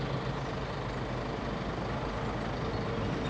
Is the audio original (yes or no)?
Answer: yes